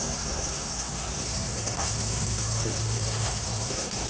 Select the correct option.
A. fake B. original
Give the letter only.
A